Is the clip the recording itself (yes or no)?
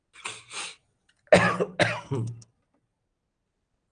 yes